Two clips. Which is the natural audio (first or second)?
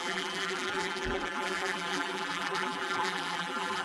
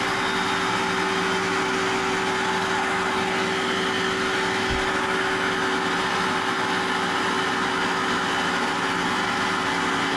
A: second